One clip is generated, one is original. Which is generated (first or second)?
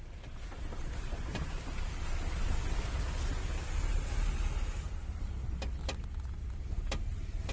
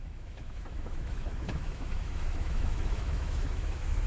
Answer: second